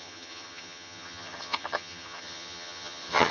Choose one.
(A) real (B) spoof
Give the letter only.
B